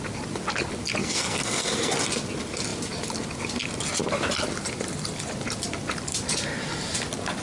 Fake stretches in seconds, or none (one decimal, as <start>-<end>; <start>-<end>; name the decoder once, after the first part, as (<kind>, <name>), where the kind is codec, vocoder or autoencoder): 1.0-1.9 (codec, SNAC)